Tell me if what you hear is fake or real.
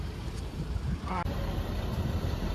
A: fake